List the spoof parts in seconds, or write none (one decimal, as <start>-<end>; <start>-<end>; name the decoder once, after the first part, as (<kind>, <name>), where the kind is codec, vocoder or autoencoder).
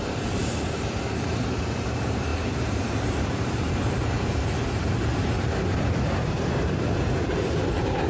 0.0-8.1 (vocoder, BigVGAN v2)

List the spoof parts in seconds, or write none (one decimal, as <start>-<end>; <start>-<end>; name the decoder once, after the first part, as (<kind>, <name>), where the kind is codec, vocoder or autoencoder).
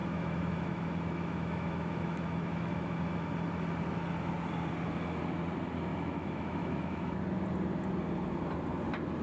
0.0-3.3 (autoencoder, DAC-VAE); 5.9-7.2